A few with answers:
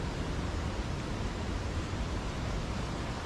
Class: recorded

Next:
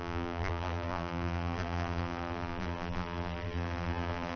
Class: remade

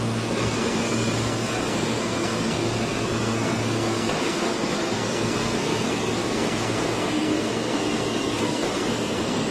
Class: remade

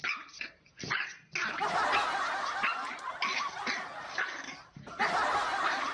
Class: recorded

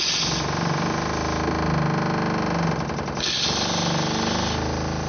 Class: recorded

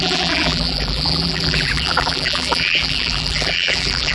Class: remade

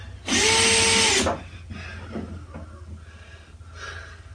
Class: recorded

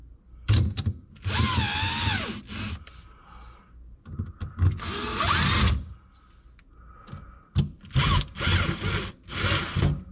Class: recorded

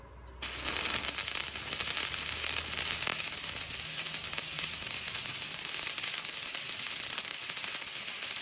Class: recorded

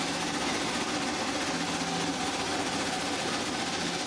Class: recorded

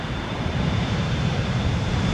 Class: remade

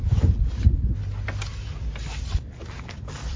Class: recorded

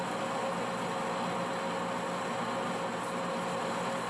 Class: recorded